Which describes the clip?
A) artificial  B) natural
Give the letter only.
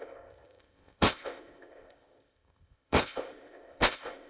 A